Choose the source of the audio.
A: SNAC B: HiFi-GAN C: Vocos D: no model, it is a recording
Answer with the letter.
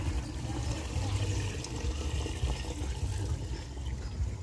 D